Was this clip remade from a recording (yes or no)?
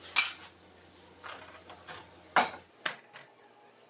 no